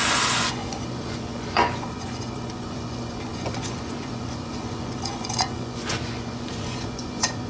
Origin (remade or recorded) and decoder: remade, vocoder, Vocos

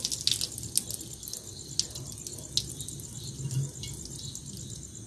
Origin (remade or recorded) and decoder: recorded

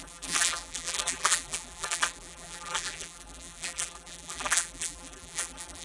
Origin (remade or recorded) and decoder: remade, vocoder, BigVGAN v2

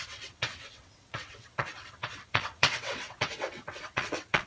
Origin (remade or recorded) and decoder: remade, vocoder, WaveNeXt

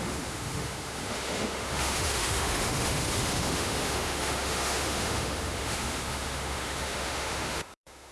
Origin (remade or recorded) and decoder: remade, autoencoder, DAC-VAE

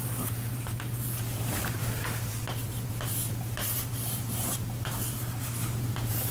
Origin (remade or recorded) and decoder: remade, vocoder, BigVGAN v2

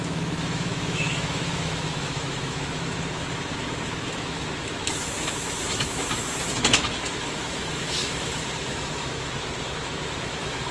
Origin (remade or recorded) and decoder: remade, autoencoder, DAC-VAE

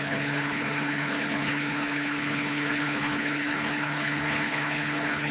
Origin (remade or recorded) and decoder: remade, codec, HILCodec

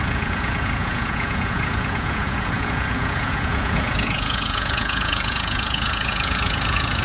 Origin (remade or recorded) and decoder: remade, vocoder, Vocos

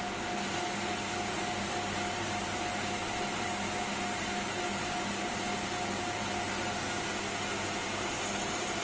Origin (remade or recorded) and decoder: recorded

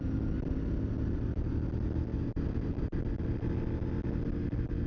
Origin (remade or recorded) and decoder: recorded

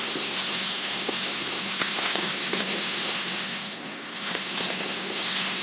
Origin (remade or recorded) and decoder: remade, codec, SNAC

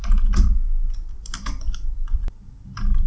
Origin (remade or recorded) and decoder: recorded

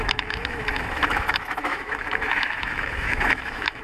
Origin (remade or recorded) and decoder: remade, autoencoder, DAC-VAE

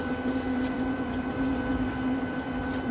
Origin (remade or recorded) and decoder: remade, vocoder, BigVGAN v2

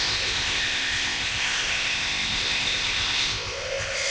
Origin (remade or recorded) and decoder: remade, codec, ZipCodec